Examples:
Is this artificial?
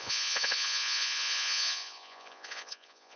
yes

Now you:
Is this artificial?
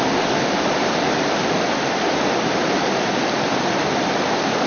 no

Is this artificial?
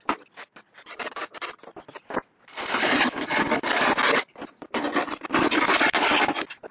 no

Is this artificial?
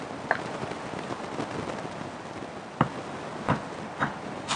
no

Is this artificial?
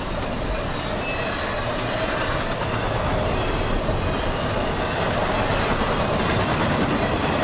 no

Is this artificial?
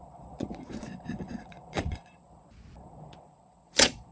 yes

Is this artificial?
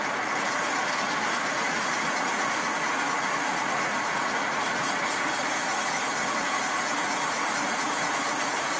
yes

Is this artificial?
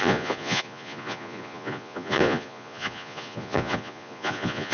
yes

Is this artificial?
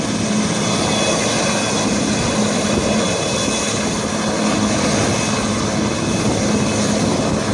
no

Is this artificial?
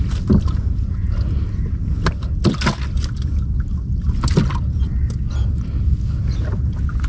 no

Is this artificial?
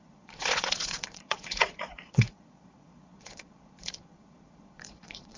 yes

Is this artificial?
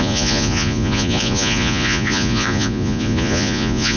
yes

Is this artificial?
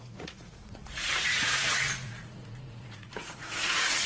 yes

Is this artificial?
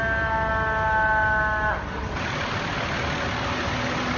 no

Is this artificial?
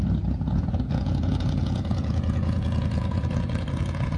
yes